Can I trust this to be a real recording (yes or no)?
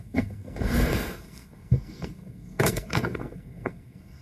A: no